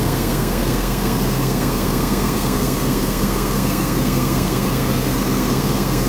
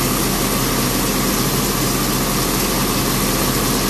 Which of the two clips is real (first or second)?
second